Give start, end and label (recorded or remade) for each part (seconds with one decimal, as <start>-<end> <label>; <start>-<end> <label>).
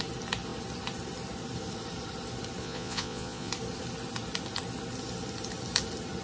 0.0-2.6 recorded; 2.6-3.5 remade; 3.5-6.2 recorded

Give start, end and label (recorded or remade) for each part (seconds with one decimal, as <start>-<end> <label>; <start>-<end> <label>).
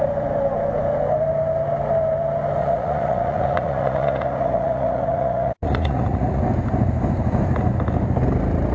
0.0-2.6 recorded; 2.6-6.4 remade; 6.4-8.7 recorded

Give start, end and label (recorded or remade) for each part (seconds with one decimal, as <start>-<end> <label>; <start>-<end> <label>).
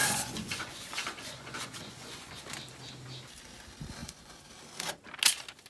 0.0-2.4 remade; 2.4-4.0 recorded; 4.0-4.5 remade; 4.5-5.7 recorded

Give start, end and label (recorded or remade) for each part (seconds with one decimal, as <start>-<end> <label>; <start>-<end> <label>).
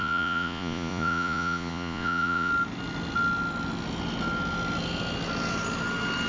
0.0-2.5 remade; 2.5-6.3 recorded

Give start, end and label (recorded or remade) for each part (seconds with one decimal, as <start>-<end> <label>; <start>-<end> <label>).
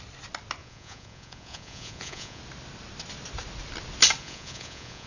0.0-0.6 recorded; 0.6-2.4 remade; 2.4-4.2 recorded; 4.2-5.1 remade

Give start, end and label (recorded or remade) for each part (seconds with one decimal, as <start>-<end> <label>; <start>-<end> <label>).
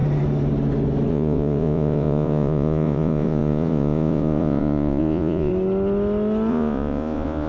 0.0-1.1 recorded; 1.1-5.5 remade; 5.5-6.5 recorded; 6.5-7.5 remade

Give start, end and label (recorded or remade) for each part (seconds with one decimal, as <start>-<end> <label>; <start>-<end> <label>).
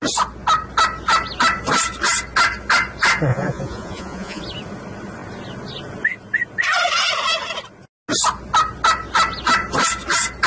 0.0-3.3 recorded; 3.3-4.4 remade; 4.4-10.5 recorded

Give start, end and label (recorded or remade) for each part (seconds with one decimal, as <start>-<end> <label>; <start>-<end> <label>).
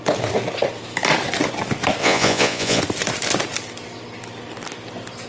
0.0-2.0 recorded; 2.0-2.8 remade; 2.8-5.3 recorded